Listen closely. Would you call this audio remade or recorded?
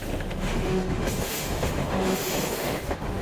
remade